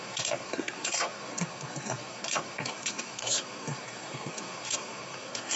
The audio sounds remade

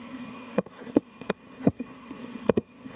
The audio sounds remade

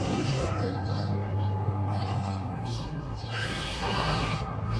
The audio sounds remade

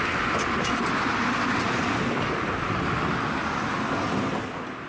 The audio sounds recorded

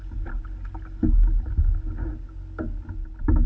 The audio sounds recorded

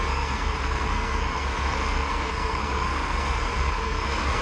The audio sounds remade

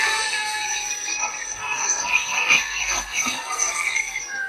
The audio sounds remade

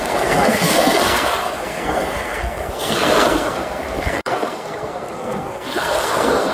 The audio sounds remade